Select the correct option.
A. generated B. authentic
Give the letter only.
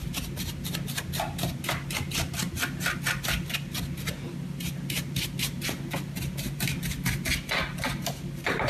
B